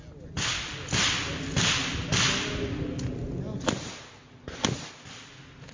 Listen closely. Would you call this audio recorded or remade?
recorded